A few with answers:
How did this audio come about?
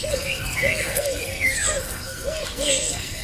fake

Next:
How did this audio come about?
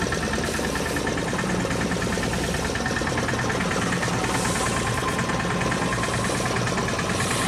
real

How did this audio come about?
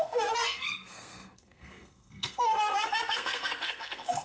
fake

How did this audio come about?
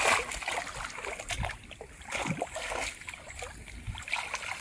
real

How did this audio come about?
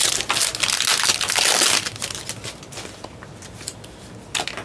real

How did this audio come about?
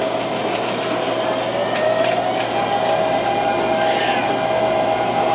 real